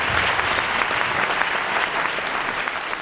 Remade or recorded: remade